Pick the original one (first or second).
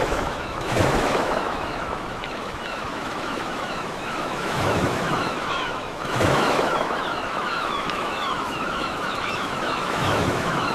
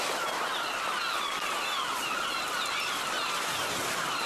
second